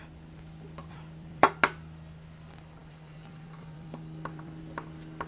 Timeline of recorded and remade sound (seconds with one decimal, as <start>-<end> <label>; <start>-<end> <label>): 0.0-0.8 recorded; 0.8-1.5 remade; 1.5-2.8 recorded; 2.8-4.6 remade; 4.6-5.3 recorded